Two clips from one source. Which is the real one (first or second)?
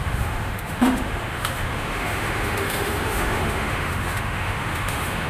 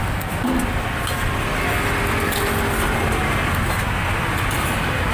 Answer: second